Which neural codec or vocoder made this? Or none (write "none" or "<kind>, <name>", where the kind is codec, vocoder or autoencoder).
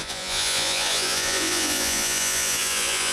vocoder, Vocos